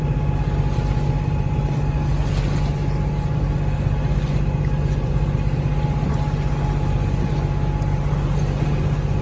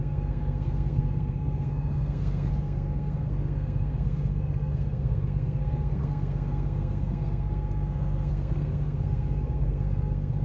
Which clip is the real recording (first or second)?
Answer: first